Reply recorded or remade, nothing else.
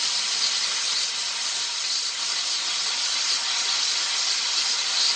recorded